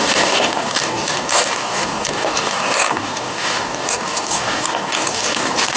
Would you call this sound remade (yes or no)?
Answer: yes